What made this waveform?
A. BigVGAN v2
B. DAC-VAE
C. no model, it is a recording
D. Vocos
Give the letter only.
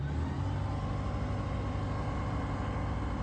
C